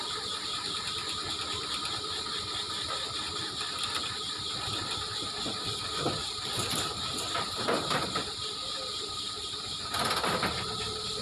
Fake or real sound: real